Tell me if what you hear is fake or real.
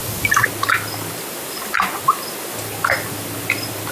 real